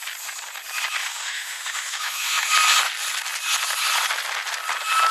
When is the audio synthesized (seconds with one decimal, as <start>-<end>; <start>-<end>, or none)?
1.0-2.5